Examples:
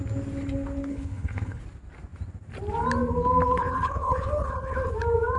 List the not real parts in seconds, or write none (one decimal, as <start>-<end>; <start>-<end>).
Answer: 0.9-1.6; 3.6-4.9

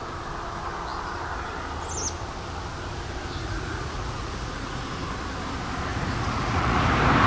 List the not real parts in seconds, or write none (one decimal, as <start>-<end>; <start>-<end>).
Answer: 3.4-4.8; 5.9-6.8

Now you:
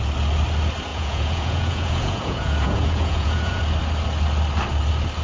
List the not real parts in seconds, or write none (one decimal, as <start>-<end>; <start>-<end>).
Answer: 0.9-3.6